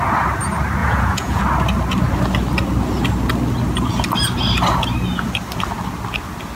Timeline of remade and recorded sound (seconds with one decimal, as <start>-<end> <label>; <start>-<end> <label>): 0.0-0.8 recorded; 0.8-1.4 remade; 1.4-6.5 recorded